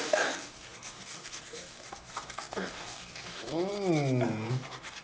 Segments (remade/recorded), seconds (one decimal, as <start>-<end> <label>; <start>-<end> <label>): 0.0-3.7 remade; 3.7-4.5 recorded; 4.5-5.0 remade